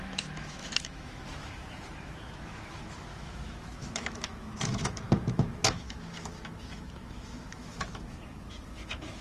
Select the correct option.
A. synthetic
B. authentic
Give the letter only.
A